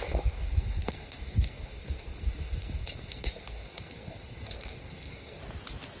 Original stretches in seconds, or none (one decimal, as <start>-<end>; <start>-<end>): 5.4-6.0